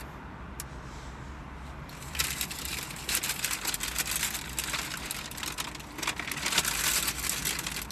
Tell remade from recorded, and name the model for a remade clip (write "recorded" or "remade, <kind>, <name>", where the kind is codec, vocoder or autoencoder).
recorded